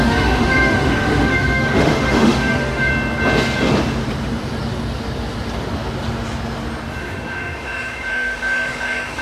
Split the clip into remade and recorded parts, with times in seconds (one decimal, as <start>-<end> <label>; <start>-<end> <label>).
0.0-2.9 remade; 2.9-7.0 recorded; 7.0-9.2 remade